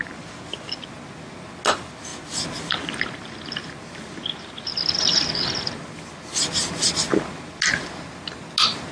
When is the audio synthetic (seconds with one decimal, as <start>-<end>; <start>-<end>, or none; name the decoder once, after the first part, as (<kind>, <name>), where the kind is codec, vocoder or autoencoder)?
none